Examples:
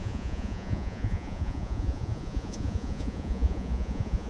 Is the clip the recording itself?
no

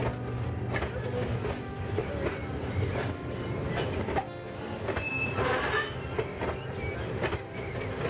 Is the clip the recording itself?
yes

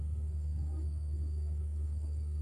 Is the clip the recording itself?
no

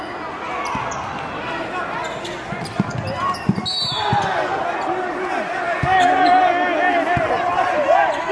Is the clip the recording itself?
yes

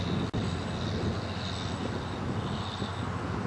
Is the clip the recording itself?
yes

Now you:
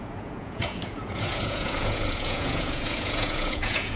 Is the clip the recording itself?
no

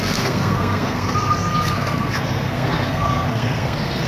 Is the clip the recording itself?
no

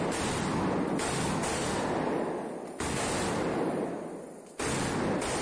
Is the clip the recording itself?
yes